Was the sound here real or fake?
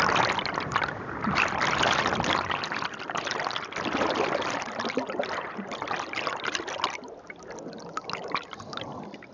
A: real